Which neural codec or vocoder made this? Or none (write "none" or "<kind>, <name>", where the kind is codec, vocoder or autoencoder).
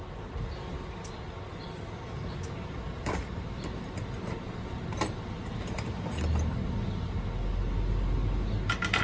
none